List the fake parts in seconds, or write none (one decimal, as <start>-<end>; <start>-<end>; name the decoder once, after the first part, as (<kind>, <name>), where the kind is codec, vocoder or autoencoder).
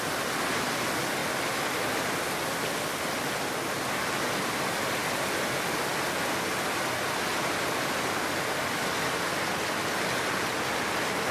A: none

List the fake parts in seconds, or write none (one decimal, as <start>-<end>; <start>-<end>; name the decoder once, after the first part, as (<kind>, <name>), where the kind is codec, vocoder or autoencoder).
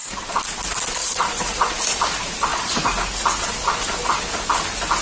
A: 0.0-0.6 (vocoder, BigVGAN v2); 1.0-1.7; 2.5-3.0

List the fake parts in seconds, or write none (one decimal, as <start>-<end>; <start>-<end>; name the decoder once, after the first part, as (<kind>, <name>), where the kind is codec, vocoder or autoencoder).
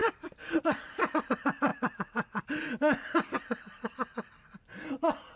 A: 0.0-1.2 (vocoder, BigVGAN v2)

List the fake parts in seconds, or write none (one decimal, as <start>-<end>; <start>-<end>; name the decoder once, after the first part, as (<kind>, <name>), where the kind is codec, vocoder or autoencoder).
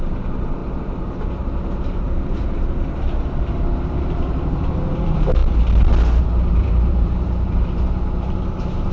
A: 0.0-5.4 (vocoder, BigVGAN v2); 6.2-8.9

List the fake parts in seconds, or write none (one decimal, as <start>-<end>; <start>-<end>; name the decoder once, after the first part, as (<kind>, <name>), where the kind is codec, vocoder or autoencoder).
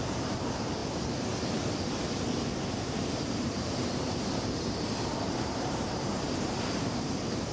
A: 0.0-0.8 (vocoder, BigVGAN v2); 2.6-7.5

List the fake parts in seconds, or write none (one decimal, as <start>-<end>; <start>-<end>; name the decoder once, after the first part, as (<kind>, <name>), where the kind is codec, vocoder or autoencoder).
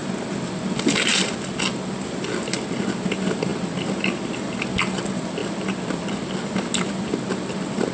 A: none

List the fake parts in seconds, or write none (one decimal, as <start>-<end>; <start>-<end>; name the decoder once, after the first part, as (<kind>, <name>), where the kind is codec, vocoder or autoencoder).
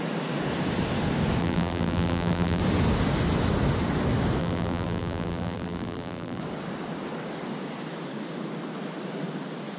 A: 1.4-2.6 (vocoder, BigVGAN v2); 4.4-6.4